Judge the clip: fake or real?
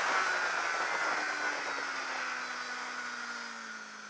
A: real